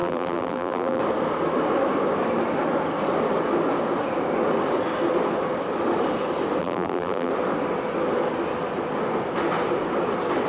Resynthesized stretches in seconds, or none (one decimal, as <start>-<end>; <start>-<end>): 0.0-1.0; 6.6-7.3